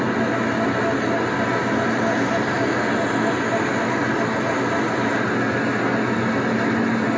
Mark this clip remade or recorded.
recorded